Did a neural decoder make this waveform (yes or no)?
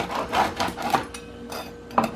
no